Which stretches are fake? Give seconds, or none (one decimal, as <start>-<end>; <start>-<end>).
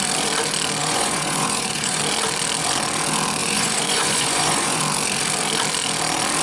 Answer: 0.8-2.0; 3.4-4.8